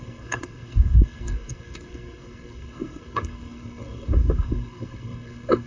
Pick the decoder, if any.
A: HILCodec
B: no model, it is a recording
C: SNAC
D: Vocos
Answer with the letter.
C